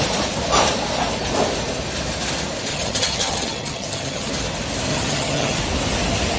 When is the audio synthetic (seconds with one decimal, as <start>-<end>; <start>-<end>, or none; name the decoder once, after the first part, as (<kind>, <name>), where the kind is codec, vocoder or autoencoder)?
2.7-4.3 (vocoder, HiFi-GAN); 4.9-5.6